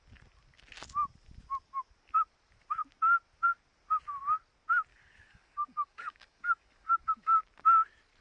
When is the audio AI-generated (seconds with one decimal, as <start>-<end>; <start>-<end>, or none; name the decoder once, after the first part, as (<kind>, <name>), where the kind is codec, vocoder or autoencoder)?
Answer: 4.9-7.4 (codec, DAC)